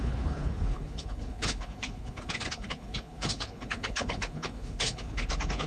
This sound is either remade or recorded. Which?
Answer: remade